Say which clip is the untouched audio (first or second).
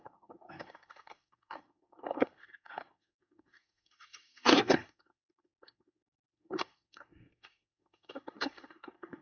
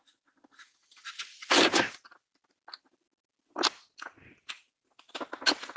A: second